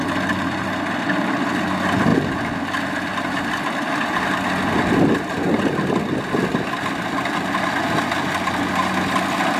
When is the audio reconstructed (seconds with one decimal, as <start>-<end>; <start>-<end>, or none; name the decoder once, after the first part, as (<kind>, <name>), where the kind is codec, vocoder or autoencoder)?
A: none